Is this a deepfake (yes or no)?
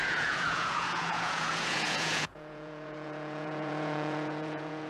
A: yes